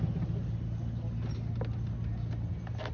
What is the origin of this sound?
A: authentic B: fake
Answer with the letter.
A